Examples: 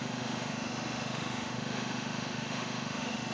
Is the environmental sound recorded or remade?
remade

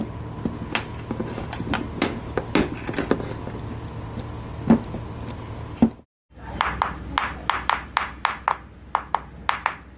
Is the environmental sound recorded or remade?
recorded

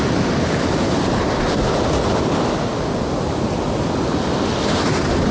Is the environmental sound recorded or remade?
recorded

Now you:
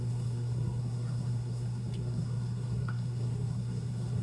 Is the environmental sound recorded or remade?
remade